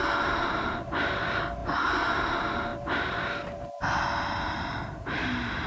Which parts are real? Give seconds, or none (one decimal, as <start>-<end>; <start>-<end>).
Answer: 0.0-1.6; 2.1-5.7